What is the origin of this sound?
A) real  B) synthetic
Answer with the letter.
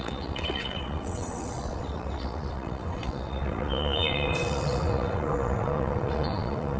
B